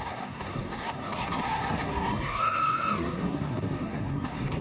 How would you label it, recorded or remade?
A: remade